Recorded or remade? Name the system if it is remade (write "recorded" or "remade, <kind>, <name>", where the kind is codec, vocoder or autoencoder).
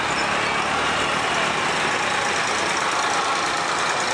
recorded